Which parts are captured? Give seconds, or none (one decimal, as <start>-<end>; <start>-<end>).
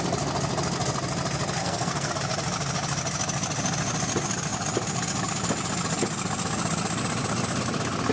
0.0-1.6; 2.1-8.1